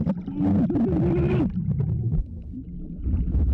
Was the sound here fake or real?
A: fake